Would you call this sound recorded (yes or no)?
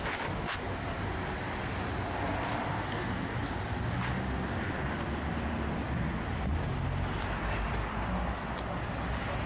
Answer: yes